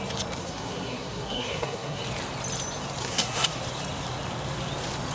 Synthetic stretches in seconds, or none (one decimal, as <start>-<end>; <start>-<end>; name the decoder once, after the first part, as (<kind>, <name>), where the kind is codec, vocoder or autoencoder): 0.4-2.0 (codec, SNAC); 3.0-3.6